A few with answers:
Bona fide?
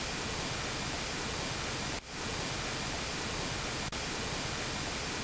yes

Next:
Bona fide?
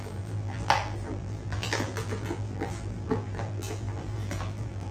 no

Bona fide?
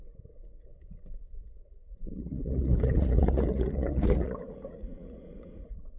no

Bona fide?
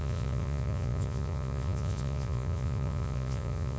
no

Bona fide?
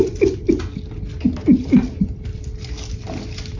yes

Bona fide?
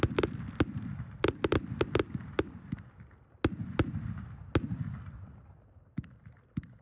yes